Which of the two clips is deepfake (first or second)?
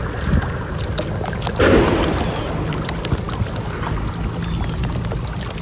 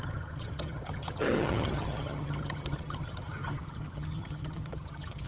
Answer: second